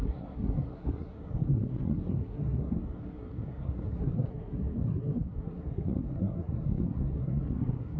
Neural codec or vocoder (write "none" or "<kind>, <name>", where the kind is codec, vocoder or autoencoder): codec, SNAC